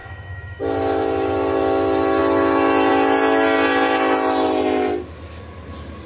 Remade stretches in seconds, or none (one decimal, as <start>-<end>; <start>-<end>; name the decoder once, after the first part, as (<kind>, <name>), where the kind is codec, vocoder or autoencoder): 0.0-0.6 (autoencoder, DAC-VAE)